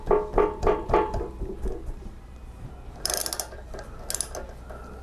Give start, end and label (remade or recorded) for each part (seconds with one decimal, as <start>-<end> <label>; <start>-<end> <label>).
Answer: 0.0-5.0 recorded